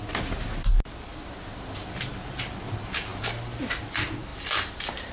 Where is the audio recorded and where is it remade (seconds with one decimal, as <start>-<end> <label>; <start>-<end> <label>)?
0.0-1.1 recorded; 1.1-2.0 remade; 2.0-4.3 recorded; 4.3-5.1 remade